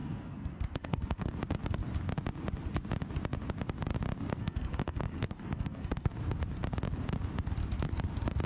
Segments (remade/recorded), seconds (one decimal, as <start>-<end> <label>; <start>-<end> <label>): 0.0-1.3 remade; 1.3-4.3 recorded; 4.3-6.1 remade; 6.1-8.5 recorded